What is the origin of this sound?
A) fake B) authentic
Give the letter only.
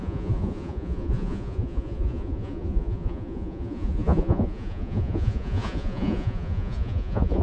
A